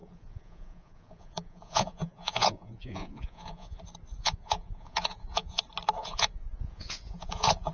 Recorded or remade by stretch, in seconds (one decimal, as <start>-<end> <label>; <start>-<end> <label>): 0.0-3.8 remade; 3.8-4.2 recorded; 4.2-5.6 remade; 5.6-6.0 recorded; 6.0-7.7 remade